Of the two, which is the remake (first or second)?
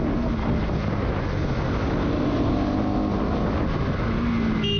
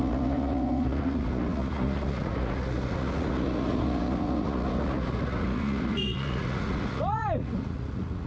second